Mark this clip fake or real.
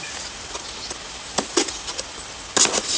real